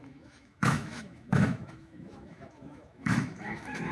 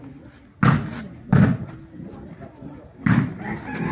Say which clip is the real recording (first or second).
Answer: second